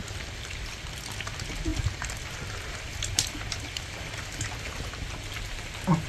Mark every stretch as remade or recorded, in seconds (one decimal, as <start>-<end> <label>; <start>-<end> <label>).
0.0-1.7 recorded; 1.7-4.9 remade; 4.9-6.1 recorded